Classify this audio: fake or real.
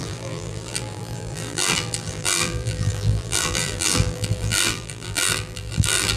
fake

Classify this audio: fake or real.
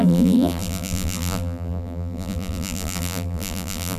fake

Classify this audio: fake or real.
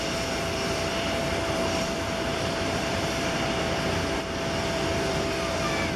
fake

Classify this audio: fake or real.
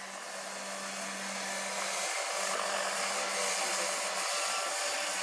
real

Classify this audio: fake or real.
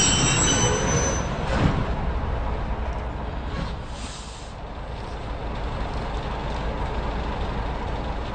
real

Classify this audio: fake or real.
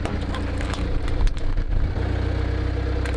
real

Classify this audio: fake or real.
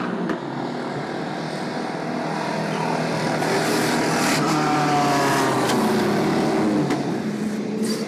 real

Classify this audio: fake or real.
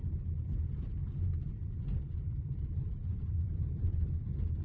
fake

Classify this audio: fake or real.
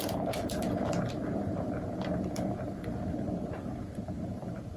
fake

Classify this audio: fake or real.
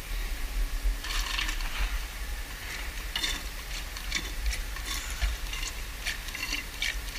real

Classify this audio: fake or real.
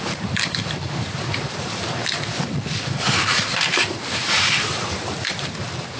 fake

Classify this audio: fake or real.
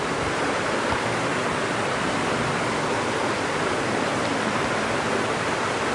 real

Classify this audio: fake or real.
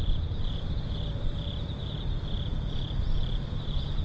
fake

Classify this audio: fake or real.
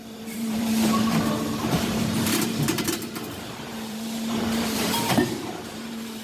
fake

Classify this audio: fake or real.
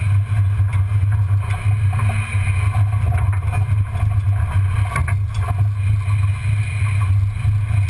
real